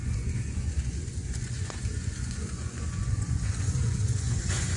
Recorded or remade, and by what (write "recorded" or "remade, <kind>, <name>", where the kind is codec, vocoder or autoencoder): remade, vocoder, Vocos